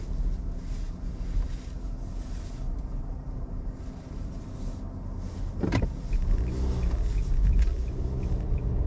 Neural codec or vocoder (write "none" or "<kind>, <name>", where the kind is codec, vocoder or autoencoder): none